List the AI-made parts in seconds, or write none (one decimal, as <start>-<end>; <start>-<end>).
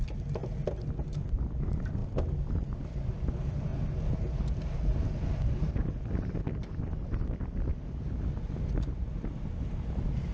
0.0-0.4; 1.2-3.7; 4.5-7.7; 9.6-10.3